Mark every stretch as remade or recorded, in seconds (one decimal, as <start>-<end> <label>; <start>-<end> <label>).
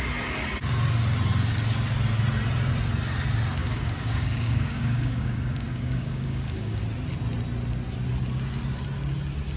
0.0-3.6 recorded; 3.6-6.8 remade; 6.8-9.6 recorded